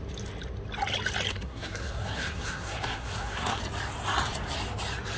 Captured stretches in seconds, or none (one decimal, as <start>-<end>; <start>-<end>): 0.0-1.3; 3.6-5.2